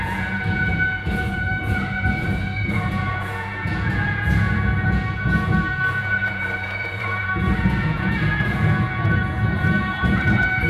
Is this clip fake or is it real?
fake